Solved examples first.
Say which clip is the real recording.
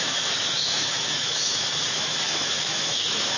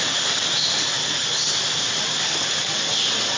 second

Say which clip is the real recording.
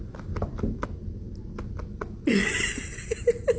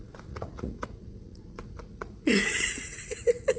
first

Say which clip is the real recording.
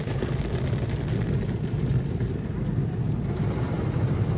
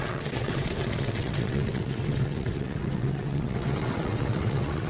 first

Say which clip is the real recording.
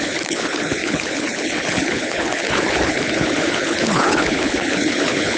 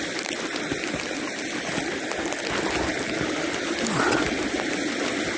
second